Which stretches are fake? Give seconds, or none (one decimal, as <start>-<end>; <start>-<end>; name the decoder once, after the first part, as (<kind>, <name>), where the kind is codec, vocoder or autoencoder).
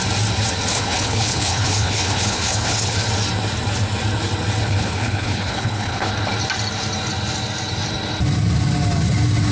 0.7-3.1 (codec, HILCodec); 4.6-6.1